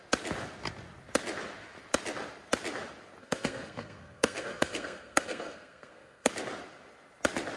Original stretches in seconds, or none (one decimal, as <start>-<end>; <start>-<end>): 0.0-3.2; 6.3-7.6

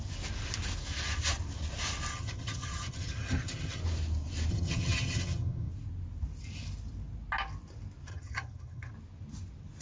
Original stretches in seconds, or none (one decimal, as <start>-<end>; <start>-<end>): 0.0-2.1; 3.8-4.5; 5.7-8.1; 8.9-9.8

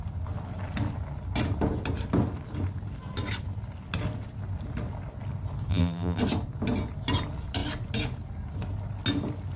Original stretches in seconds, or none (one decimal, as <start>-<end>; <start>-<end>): 0.0-5.7; 6.2-9.6